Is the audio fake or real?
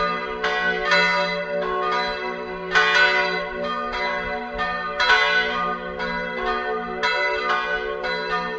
real